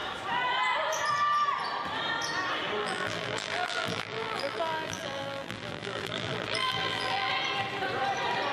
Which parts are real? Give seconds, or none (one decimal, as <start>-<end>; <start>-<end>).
0.0-2.8; 7.3-8.5